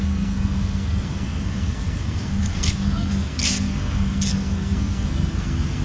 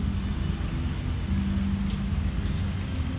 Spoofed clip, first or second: first